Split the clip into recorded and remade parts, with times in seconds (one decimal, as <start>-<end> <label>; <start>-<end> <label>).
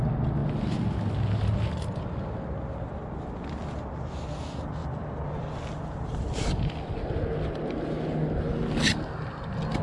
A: 0.0-4.8 recorded; 4.8-5.6 remade; 5.6-9.8 recorded